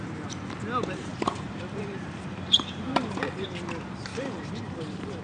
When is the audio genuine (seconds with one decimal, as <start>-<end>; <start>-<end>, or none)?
0.0-1.1; 3.2-4.1